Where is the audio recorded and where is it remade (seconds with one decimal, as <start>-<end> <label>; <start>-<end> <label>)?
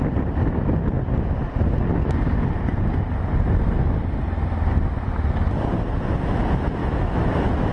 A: 0.0-6.8 recorded; 6.8-7.7 remade